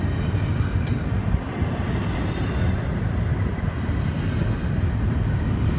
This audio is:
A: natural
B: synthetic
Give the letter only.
A